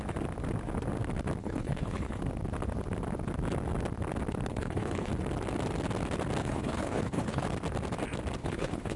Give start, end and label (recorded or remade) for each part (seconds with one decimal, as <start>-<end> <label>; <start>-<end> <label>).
0.0-1.4 recorded; 1.4-2.2 remade; 2.2-4.5 recorded; 4.5-5.1 remade; 5.1-6.4 recorded; 6.4-7.4 remade; 7.4-8.4 recorded; 8.4-9.0 remade